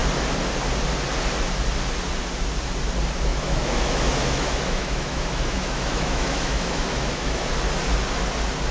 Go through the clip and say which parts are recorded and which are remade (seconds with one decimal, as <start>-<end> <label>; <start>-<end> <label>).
0.0-3.3 recorded; 3.3-7.5 remade; 7.5-8.7 recorded